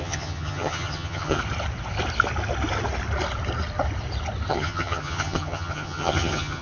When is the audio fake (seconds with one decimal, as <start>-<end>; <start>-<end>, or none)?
0.0-1.4; 4.5-6.6